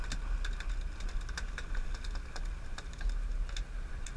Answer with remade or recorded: recorded